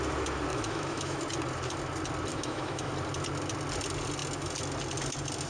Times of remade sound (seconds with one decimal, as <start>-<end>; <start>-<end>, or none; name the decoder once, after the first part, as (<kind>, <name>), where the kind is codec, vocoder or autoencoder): 0.5-1.2 (autoencoder, DAC-VAE); 2.3-2.9